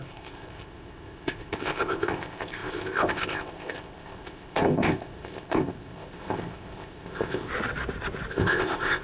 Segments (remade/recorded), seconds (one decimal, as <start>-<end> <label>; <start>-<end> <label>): 0.0-7.5 remade; 7.5-8.3 recorded; 8.3-9.0 remade